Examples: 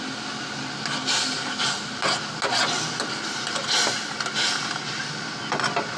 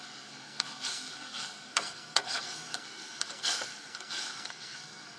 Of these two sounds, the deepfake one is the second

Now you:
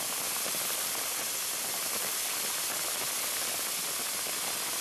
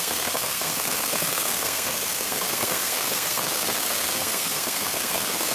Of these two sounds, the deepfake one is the second